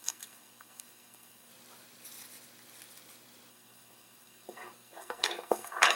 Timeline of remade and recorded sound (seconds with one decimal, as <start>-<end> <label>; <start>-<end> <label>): 0.0-1.5 remade; 1.5-3.5 recorded; 3.5-6.0 remade